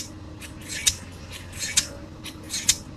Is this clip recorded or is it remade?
recorded